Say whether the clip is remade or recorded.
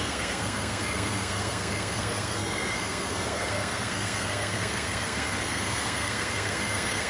remade